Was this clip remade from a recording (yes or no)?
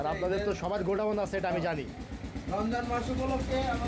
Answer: no